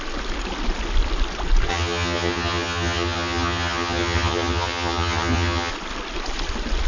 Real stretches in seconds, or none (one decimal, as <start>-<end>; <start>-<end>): 0.0-1.7; 5.7-6.9